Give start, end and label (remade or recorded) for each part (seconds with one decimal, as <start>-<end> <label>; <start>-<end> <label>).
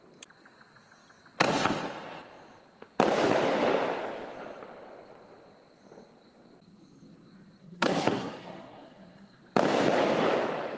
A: 0.0-7.6 recorded; 7.6-9.4 remade; 9.4-10.8 recorded